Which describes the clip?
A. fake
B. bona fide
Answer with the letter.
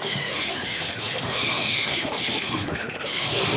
A